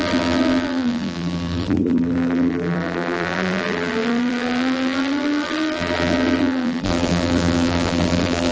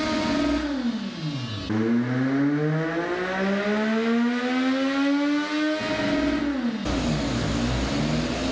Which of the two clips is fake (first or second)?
first